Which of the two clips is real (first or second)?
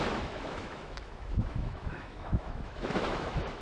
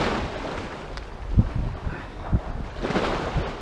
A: second